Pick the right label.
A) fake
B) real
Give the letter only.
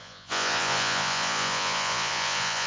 A